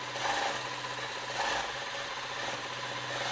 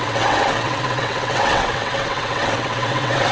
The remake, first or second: second